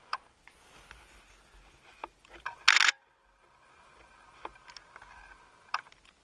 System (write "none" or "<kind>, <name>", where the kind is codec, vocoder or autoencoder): none